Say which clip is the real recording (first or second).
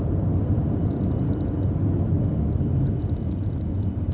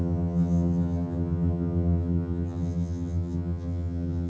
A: first